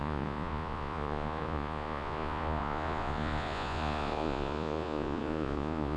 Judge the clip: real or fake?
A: fake